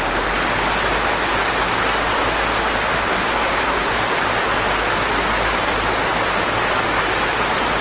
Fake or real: real